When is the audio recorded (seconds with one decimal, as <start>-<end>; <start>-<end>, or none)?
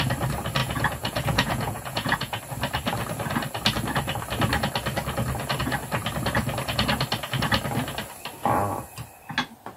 0.0-0.6; 2.4-9.8